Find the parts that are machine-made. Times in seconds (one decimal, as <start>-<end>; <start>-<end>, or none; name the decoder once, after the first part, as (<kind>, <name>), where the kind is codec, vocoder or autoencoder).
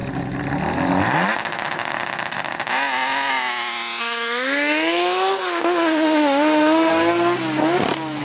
4.0-6.9 (autoencoder, DAC-VAE)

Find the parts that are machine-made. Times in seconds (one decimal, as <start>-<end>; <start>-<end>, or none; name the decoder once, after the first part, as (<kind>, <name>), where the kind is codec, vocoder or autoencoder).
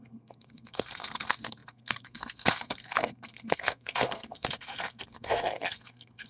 0.0-6.3 (codec, SNAC)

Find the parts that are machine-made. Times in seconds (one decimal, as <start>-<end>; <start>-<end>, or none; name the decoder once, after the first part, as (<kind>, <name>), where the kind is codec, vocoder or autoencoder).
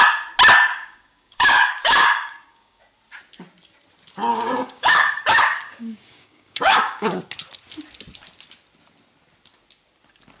0.7-2.8 (codec, DAC); 4.3-7.2